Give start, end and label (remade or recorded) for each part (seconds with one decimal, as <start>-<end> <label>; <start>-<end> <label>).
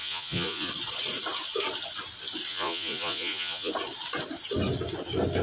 0.0-0.7 remade; 0.7-2.5 recorded; 2.5-3.7 remade; 3.7-5.4 recorded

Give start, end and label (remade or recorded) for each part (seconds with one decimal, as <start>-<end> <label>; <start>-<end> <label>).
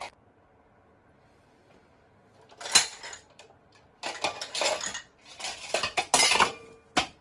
0.0-7.2 recorded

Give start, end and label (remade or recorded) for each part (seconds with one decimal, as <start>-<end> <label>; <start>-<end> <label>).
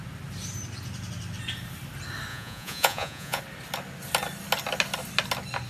0.0-2.3 recorded; 2.3-3.4 remade; 3.4-5.7 recorded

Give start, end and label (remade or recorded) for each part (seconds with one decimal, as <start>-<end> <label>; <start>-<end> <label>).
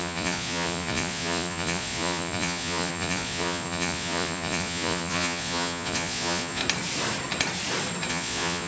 0.0-6.6 remade; 6.6-8.1 recorded; 8.1-8.7 remade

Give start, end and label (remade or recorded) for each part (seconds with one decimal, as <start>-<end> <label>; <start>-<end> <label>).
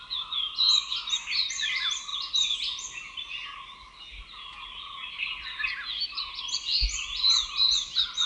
0.0-8.3 recorded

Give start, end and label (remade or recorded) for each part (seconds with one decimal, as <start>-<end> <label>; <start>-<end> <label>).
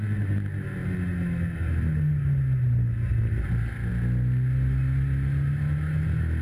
0.0-6.4 recorded